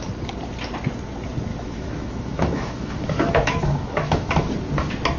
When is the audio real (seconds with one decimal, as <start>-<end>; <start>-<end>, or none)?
0.0-1.5; 4.5-5.2